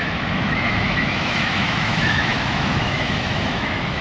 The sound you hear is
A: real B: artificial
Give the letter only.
B